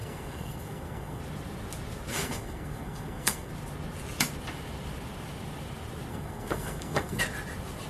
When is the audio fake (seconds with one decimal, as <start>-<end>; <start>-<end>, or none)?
0.0-1.2; 2.1-3.5; 6.1-7.2